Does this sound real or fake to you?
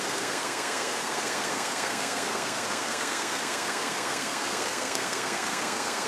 fake